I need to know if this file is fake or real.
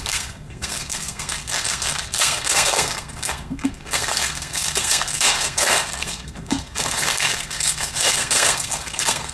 fake